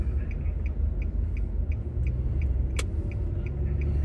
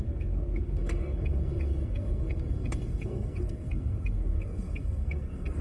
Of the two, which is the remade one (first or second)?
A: second